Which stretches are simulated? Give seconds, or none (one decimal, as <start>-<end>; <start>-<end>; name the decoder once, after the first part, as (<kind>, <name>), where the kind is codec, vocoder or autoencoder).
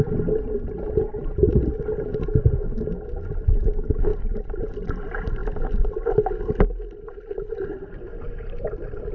none